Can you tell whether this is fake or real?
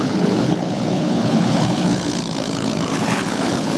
fake